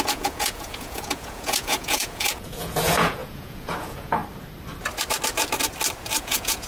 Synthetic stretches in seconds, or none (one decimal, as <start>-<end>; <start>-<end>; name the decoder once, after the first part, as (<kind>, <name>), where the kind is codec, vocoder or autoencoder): 0.0-4.2 (vocoder, Vocos); 6.2-6.7